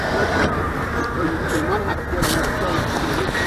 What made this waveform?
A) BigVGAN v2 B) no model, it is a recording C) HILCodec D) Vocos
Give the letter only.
A